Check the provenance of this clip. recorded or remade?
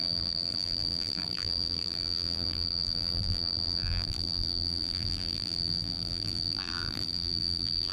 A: remade